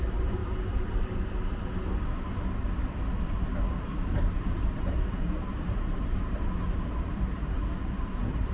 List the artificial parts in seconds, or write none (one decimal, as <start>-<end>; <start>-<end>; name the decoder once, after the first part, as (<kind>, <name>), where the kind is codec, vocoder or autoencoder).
0.0-0.4 (vocoder, BigVGAN v2); 4.5-8.5

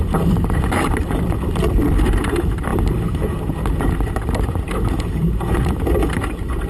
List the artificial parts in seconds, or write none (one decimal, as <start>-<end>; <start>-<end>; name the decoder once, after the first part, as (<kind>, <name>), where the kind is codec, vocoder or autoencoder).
0.0-2.7 (vocoder, BigVGAN v2); 3.6-6.7

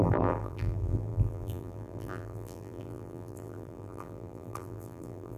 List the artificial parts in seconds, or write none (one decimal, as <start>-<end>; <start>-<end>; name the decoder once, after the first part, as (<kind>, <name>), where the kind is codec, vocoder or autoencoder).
0.0-5.4 (vocoder, BigVGAN v2)

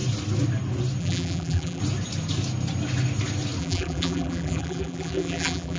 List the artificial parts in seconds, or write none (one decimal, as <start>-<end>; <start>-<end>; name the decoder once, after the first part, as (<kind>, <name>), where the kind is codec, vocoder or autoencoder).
1.0-1.8 (vocoder, BigVGAN v2); 3.6-5.8

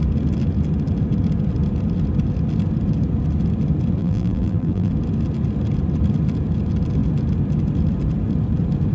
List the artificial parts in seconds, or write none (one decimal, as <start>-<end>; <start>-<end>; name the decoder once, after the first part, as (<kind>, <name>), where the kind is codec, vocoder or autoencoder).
4.0-4.9 (vocoder, BigVGAN v2)